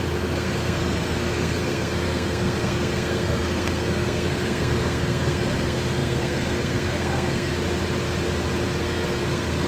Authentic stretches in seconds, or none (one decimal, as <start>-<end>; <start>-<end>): 7.5-8.8